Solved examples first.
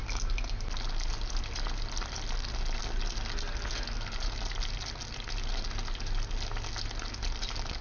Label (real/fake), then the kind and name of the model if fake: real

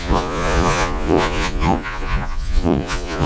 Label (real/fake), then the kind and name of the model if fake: fake, vocoder, Vocos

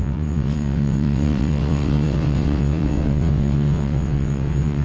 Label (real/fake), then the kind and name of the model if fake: fake, vocoder, WaveNeXt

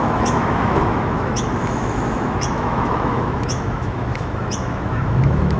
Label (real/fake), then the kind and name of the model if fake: fake, autoencoder, DAC-VAE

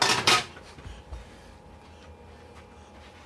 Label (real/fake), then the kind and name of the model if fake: real